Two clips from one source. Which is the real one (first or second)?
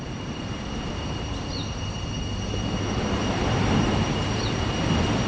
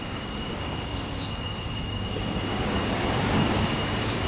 first